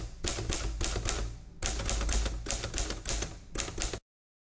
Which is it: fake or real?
real